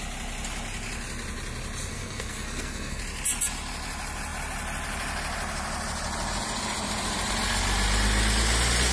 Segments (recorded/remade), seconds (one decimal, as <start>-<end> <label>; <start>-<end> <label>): 0.0-1.9 recorded; 1.9-3.0 remade; 3.0-8.9 recorded